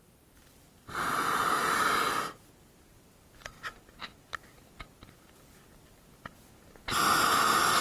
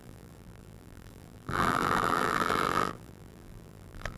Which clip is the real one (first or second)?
first